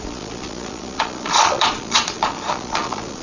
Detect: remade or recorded remade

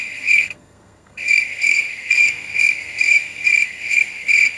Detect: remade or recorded remade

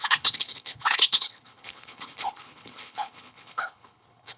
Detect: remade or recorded remade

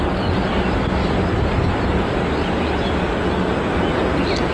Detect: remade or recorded recorded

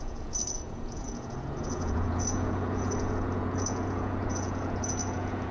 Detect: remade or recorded remade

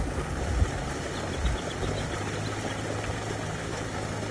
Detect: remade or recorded recorded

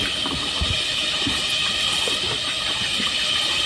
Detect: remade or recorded recorded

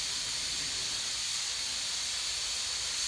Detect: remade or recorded recorded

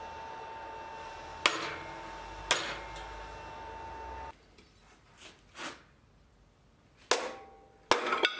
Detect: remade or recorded recorded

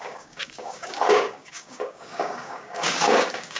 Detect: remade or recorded remade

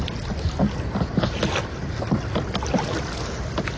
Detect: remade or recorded recorded